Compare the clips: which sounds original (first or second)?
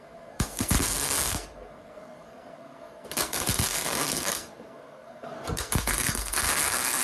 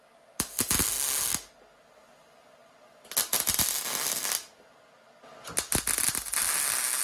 second